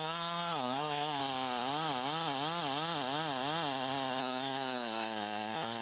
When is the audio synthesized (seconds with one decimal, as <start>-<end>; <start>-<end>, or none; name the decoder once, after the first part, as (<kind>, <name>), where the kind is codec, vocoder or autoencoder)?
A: 0.0-1.2 (codec, SNAC); 4.2-5.8